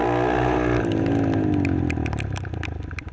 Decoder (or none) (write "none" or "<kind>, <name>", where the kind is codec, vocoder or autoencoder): none